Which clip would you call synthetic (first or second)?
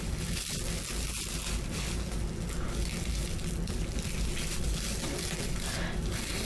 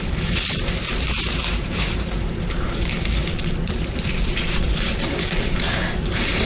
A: second